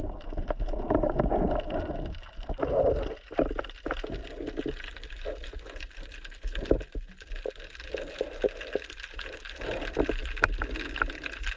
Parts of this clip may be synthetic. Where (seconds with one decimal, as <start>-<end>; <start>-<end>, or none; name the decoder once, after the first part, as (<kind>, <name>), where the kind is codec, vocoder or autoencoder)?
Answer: none